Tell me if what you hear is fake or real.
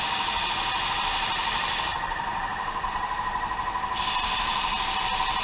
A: fake